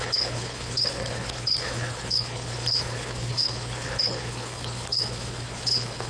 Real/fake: fake